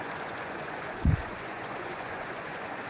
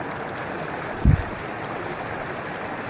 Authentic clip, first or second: second